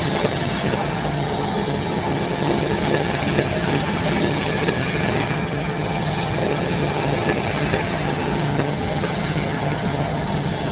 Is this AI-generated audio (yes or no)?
yes